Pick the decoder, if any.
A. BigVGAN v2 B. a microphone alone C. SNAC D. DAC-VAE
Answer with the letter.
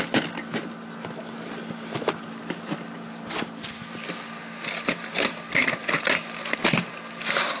B